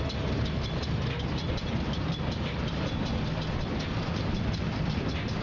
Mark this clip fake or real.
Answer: real